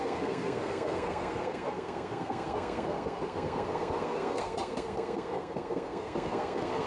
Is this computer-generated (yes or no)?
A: yes